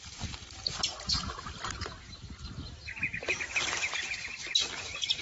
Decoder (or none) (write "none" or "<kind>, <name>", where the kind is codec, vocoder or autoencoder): none